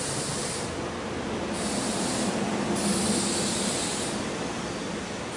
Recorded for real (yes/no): yes